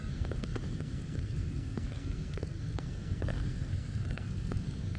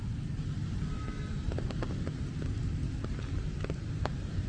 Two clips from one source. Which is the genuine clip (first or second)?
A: second